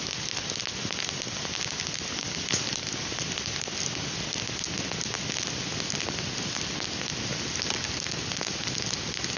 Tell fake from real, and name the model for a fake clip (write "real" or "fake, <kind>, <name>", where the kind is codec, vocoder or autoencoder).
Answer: real